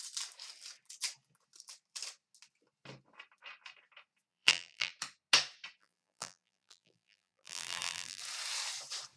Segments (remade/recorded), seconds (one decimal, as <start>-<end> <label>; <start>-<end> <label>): 0.0-4.3 recorded; 4.3-4.9 remade; 4.9-5.8 recorded; 5.8-8.2 remade; 8.2-9.2 recorded

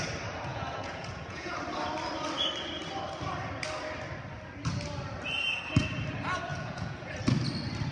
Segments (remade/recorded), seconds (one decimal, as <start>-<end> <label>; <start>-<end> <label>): 0.0-0.5 recorded; 0.5-1.6 remade; 1.6-6.5 recorded; 6.5-7.1 remade; 7.1-7.9 recorded

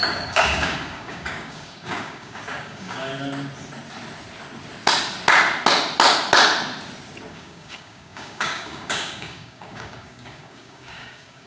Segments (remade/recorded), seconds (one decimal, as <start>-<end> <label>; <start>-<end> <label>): 0.0-3.1 remade; 3.1-7.3 recorded; 7.3-11.5 remade

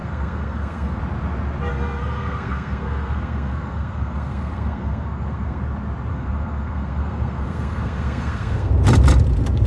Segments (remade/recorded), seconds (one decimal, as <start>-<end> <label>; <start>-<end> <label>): 0.0-1.0 remade; 1.0-1.7 recorded; 1.7-5.6 remade; 5.6-6.1 recorded; 6.1-8.7 remade; 8.7-9.7 recorded